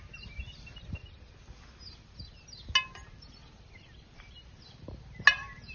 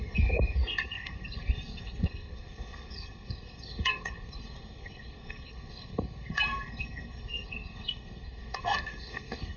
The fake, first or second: second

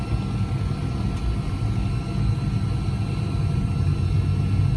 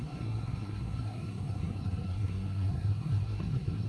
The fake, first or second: second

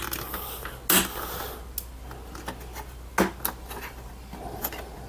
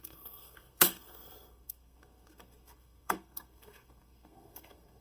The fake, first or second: second